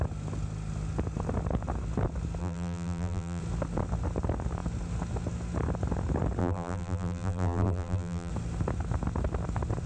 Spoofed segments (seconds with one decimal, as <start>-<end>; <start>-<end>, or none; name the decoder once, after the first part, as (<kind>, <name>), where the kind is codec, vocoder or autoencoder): 2.4-3.4 (vocoder, BigVGAN v2); 6.4-8.3